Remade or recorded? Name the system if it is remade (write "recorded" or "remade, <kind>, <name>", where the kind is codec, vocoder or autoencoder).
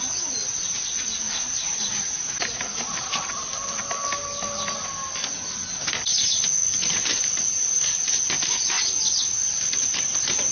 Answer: recorded